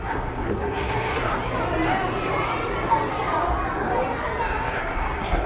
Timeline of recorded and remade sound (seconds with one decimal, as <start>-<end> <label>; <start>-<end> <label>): 0.0-1.3 remade; 1.3-4.6 recorded; 4.6-5.5 remade